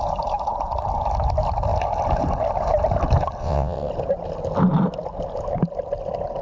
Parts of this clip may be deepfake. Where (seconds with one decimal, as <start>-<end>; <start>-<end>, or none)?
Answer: 3.4-3.9